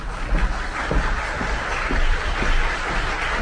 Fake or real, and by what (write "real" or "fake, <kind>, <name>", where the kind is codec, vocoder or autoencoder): real